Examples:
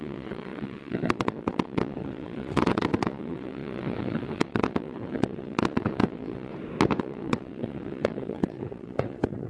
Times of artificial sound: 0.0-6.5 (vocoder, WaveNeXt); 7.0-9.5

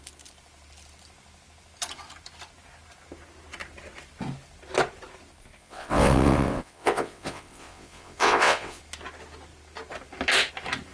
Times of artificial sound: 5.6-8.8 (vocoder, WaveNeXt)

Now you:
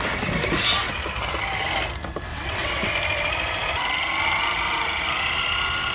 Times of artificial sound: 2.3-2.9 (vocoder, WaveNeXt)